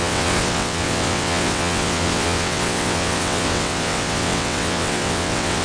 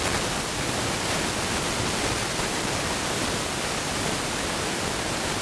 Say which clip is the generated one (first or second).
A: first